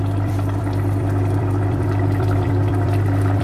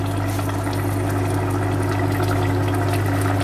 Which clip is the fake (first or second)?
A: first